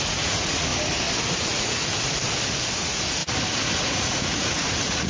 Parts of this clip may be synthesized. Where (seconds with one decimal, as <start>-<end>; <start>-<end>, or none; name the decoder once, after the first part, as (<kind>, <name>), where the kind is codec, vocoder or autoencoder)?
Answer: 0.0-0.7 (vocoder, Vocos); 1.3-1.9; 2.7-3.2; 3.8-5.1